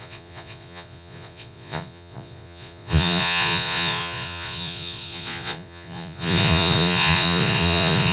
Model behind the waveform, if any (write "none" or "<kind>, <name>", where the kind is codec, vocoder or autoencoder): vocoder, Vocos